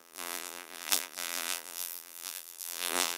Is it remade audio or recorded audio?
remade